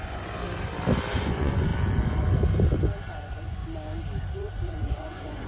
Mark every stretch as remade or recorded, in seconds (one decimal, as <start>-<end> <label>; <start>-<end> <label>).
0.0-0.4 remade; 0.4-1.1 recorded; 1.1-1.7 remade; 1.7-3.1 recorded; 3.1-3.6 remade; 3.6-4.3 recorded; 4.3-5.5 remade